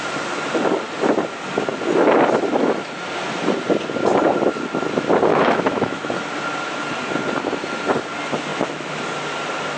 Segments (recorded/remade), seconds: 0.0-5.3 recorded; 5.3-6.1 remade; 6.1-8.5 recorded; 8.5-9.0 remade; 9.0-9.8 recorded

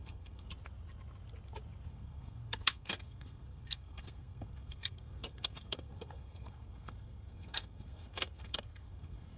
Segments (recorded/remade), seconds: 0.0-0.5 remade; 0.5-1.9 recorded; 1.9-9.4 remade